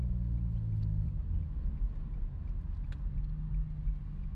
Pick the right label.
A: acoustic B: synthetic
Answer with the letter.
A